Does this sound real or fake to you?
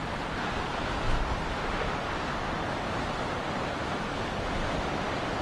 real